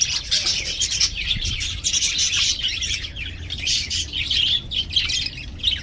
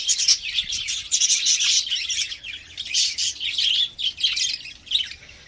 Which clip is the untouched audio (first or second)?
second